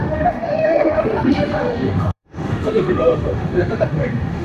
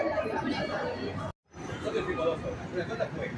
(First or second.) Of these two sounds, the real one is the second